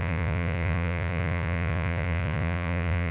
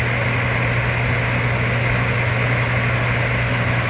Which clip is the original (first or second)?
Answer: second